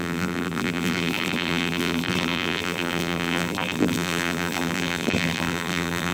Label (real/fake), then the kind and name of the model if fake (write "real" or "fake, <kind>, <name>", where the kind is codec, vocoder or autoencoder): fake, vocoder, BigVGAN v2